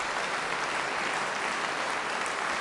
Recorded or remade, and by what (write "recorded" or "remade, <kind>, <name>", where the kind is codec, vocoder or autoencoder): recorded